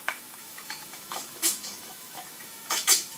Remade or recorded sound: remade